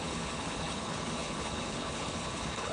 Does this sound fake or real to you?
fake